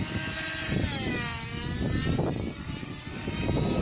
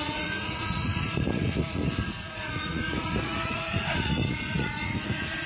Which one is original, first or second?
first